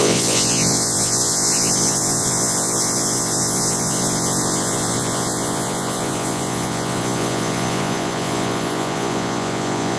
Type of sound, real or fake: fake